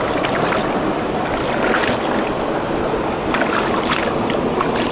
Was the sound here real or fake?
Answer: real